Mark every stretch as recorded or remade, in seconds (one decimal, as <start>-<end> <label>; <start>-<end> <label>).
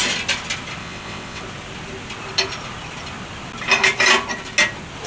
0.0-0.8 recorded; 0.8-1.4 remade; 1.4-5.1 recorded